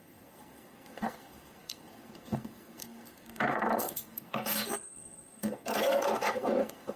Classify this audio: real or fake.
fake